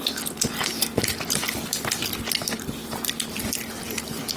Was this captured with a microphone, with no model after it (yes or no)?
yes